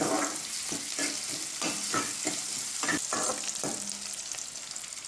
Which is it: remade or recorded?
recorded